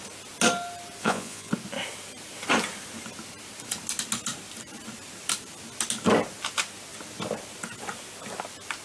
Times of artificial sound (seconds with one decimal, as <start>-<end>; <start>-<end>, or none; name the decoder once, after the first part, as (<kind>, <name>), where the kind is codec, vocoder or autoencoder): 1.0-1.5 (vocoder, Vocos)